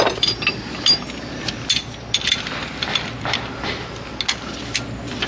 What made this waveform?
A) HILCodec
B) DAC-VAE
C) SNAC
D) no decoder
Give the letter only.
D